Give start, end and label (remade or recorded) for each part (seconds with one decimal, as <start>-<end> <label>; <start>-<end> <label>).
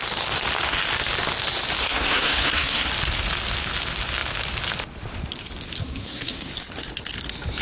0.0-1.8 recorded; 1.8-2.9 remade; 2.9-5.8 recorded; 5.8-6.5 remade; 6.5-7.6 recorded